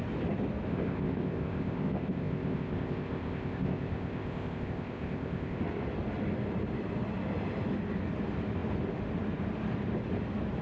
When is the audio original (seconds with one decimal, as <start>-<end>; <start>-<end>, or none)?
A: 0.0-0.7; 5.6-10.6